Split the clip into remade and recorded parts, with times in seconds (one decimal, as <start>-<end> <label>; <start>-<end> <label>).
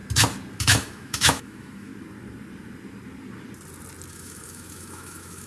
0.0-0.6 recorded; 0.6-1.9 remade; 1.9-4.1 recorded; 4.1-5.5 remade